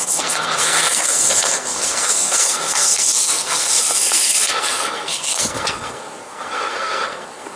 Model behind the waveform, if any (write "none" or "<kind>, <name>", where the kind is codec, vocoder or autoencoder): codec, SNAC